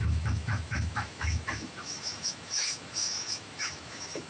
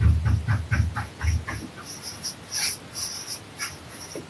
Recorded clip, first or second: second